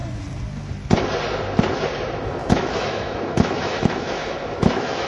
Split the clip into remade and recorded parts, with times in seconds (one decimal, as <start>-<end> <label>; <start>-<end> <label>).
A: 0.0-2.4 recorded; 2.4-5.1 remade